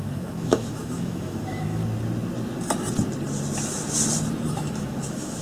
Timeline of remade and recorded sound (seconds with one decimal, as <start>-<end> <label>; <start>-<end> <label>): 0.0-1.8 remade; 1.8-4.5 recorded; 4.5-5.4 remade